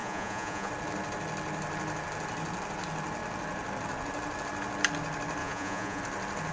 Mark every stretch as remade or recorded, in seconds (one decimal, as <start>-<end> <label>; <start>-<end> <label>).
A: 0.0-0.7 remade; 0.7-5.4 recorded; 5.4-6.0 remade; 6.0-6.5 recorded